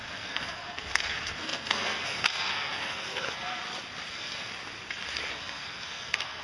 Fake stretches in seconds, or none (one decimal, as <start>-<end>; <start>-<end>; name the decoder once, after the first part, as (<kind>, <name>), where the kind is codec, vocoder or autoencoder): 0.0-3.6 (codec, SNAC); 4.1-4.5; 5.3-6.4